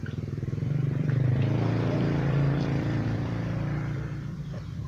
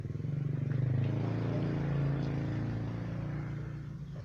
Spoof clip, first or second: first